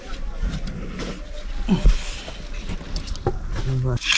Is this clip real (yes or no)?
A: yes